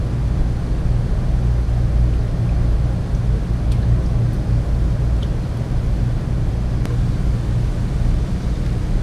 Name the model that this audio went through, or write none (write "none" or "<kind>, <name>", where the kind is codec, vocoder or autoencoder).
none